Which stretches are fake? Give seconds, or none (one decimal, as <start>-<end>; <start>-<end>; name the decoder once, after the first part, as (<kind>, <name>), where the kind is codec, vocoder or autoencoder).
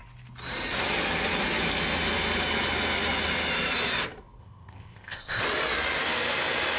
4.4-5.4 (codec, ZipCodec)